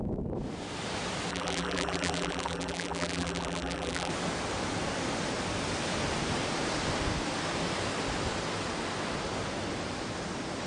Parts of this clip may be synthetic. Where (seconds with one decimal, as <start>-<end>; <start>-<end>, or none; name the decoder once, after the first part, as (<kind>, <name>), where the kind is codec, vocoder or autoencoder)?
1.3-4.1 (vocoder, BigVGAN v2)